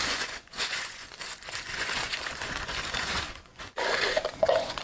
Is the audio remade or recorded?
remade